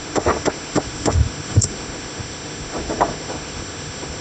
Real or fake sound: fake